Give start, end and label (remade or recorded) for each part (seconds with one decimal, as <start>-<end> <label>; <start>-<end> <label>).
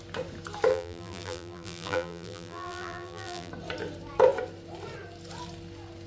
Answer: 0.0-0.7 recorded; 0.7-3.5 remade; 3.5-6.1 recorded